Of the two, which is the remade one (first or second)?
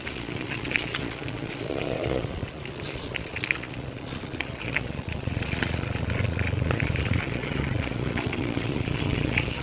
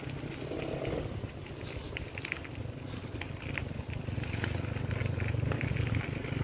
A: first